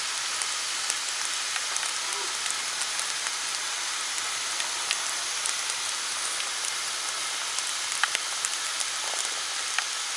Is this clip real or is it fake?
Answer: real